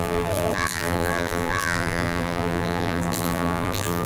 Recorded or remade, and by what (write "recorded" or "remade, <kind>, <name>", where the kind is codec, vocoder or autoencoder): remade, vocoder, BigVGAN v2